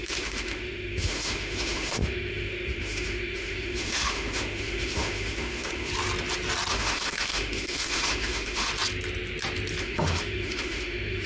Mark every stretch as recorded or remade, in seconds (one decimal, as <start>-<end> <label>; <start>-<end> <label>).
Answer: 0.0-5.9 remade; 5.9-6.7 recorded; 6.7-8.7 remade; 8.7-9.8 recorded; 9.8-11.3 remade